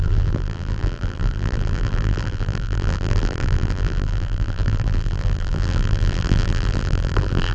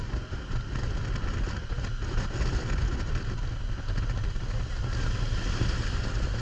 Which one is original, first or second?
second